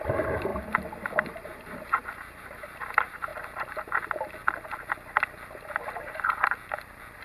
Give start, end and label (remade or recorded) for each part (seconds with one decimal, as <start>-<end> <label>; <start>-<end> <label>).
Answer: 0.0-0.5 remade; 0.5-1.3 recorded; 1.3-3.3 remade; 3.3-7.2 recorded